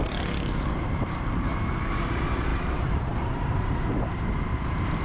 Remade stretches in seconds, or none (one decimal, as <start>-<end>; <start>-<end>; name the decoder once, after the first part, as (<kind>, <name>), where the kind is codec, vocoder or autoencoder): 2.5-4.4 (vocoder, BigVGAN v2)